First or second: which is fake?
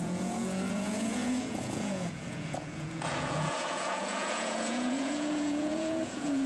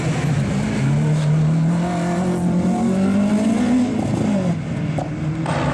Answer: first